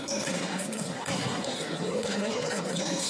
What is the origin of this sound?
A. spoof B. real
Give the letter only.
A